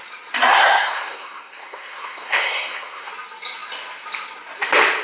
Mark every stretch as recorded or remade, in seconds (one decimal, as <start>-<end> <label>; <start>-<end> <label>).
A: 0.0-0.5 recorded; 0.5-3.1 remade; 3.1-5.0 recorded